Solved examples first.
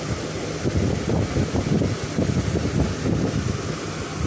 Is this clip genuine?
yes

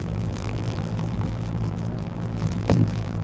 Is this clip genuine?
no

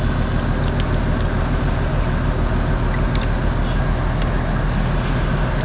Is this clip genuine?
yes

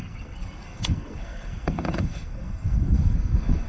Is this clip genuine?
no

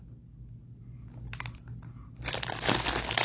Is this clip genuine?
yes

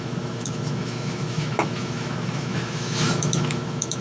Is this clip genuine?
no